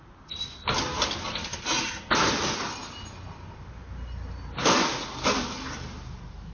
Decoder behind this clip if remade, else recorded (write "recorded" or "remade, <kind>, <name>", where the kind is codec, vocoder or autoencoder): recorded